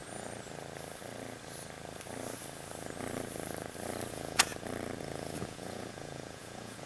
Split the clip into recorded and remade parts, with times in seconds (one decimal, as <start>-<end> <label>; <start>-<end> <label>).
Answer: 0.0-4.1 recorded; 4.1-4.5 remade; 4.5-5.0 recorded; 5.0-6.9 remade